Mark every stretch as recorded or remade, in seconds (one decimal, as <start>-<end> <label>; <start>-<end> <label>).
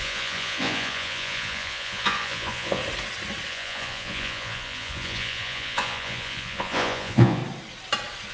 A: 0.0-2.8 remade; 2.8-3.5 recorded; 3.5-7.4 remade; 7.4-8.3 recorded